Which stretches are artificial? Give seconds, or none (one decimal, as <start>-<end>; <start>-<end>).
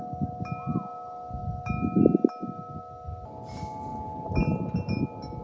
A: none